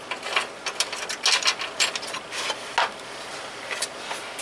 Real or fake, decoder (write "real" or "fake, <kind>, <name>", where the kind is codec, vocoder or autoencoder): real